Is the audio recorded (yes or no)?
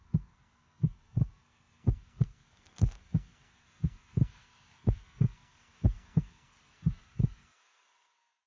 no